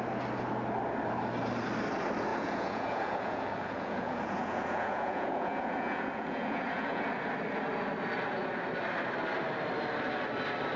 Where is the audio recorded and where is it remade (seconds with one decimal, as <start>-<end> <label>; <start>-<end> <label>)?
0.0-2.3 recorded; 2.3-7.0 remade; 7.0-10.8 recorded